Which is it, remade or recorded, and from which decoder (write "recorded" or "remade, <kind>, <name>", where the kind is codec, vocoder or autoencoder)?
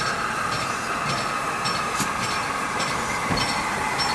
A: recorded